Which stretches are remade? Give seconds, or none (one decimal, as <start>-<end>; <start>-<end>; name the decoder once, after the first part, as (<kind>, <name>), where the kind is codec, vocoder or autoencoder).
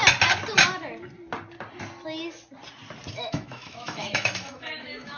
3.1-5.2 (autoencoder, DAC-VAE)